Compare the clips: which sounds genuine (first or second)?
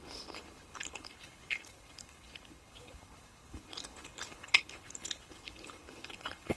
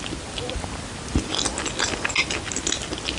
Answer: second